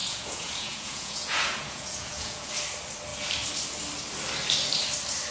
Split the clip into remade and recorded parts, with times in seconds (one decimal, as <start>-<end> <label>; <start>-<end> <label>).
0.0-2.5 remade; 2.5-5.3 recorded